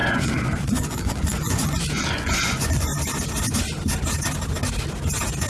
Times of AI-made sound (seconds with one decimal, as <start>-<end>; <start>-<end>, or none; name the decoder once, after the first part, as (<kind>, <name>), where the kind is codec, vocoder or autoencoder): 0.0-2.9 (vocoder, Vocos)